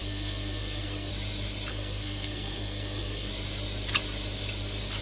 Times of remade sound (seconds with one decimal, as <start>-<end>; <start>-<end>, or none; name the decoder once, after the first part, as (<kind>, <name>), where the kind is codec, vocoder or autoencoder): 0.0-1.1 (codec, SNAC); 1.7-3.3